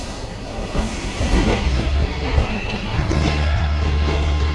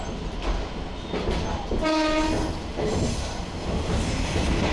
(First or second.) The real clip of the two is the second